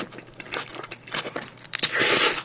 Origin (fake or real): fake